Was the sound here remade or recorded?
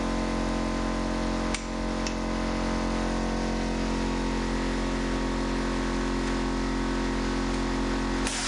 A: recorded